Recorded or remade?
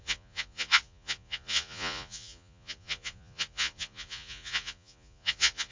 remade